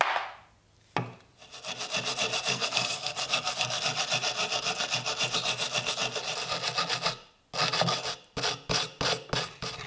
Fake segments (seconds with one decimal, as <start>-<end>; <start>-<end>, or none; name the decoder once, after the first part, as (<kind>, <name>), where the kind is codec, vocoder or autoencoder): 2.5-3.8 (codec, SNAC)